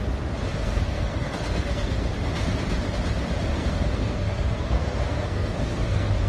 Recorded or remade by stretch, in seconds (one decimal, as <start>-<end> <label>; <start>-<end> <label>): 0.0-0.5 recorded; 0.5-2.1 remade; 2.1-3.5 recorded; 3.5-6.3 remade